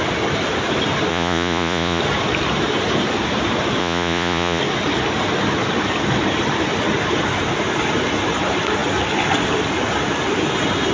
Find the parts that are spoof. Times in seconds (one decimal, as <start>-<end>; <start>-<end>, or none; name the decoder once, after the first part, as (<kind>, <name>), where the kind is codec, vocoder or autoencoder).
1.1-2.0 (vocoder, Vocos); 3.8-4.6

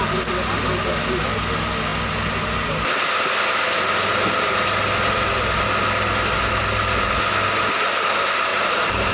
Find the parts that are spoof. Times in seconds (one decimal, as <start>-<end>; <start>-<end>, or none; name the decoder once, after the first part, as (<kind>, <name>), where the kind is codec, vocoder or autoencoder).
8.5-9.1 (vocoder, BigVGAN v2)